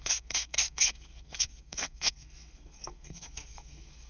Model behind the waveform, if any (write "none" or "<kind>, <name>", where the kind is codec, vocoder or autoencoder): codec, SNAC